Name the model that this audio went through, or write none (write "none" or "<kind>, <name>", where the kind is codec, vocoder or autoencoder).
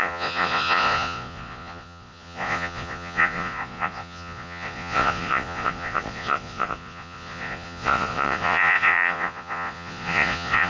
vocoder, Vocos